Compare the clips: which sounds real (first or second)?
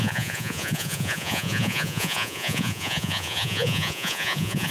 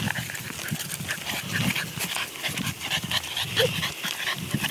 second